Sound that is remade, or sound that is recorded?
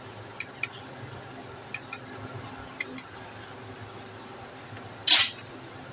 recorded